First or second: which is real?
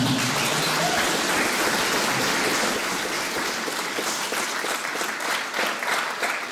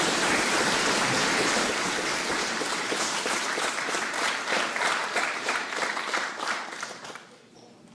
first